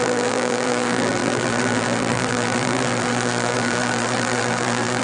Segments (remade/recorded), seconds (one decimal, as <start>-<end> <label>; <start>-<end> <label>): 0.0-5.0 remade